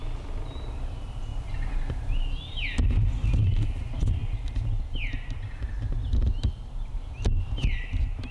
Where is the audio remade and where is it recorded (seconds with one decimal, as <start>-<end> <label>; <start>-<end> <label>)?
0.0-1.3 recorded; 1.3-1.9 remade; 1.9-8.3 recorded